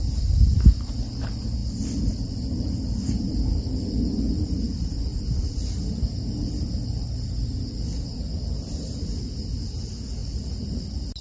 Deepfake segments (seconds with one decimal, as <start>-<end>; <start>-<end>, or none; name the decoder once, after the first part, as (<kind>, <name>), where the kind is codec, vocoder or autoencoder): none